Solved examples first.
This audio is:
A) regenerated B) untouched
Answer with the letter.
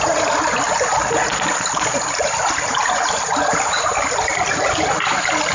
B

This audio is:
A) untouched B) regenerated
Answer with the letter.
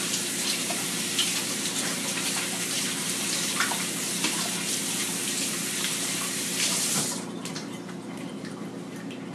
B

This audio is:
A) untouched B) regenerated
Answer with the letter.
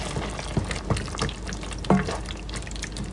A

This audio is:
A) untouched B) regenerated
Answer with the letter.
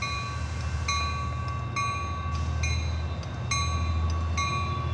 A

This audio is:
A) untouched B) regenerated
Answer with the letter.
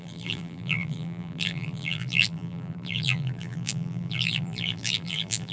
B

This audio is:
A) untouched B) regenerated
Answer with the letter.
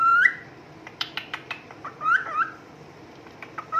B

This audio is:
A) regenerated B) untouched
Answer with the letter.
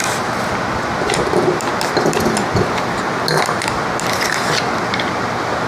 B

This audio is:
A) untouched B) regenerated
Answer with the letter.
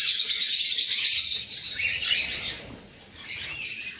B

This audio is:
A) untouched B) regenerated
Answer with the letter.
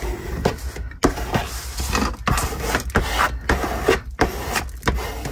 A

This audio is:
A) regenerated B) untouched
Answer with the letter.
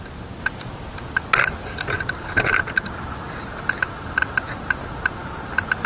B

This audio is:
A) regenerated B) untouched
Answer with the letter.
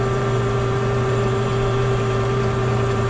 A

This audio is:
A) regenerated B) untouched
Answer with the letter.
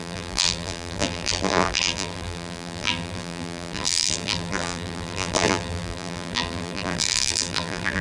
A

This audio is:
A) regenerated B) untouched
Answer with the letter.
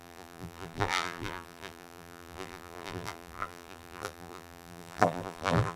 A